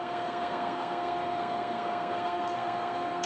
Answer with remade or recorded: remade